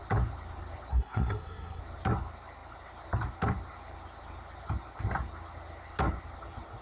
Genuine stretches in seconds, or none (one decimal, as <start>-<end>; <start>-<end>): 0.0-0.9; 1.8-6.8